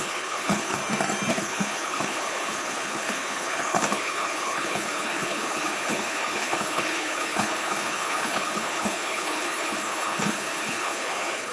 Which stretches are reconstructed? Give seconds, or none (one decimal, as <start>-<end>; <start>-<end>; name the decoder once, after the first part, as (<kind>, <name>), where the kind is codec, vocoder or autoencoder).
0.0-0.8 (codec, HILCodec); 1.3-11.5